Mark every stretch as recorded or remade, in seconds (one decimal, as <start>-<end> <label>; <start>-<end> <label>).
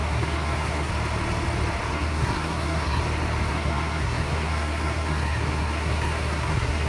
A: 0.0-0.9 remade; 0.9-1.9 recorded; 1.9-3.0 remade; 3.0-3.5 recorded; 3.5-6.9 remade